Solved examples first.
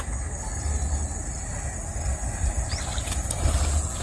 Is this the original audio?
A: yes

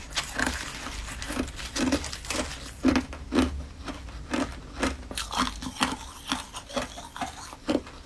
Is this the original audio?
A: yes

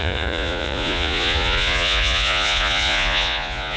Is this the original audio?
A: no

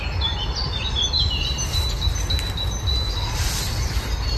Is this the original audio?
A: yes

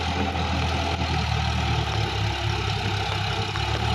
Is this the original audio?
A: yes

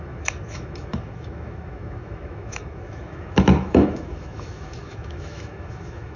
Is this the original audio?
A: no